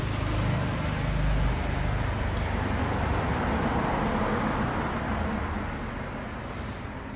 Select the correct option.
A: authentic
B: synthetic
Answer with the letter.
A